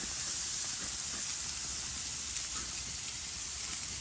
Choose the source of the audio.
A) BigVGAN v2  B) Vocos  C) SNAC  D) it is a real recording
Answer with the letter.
D